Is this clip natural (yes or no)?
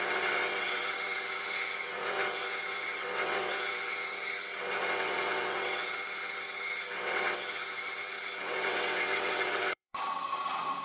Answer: no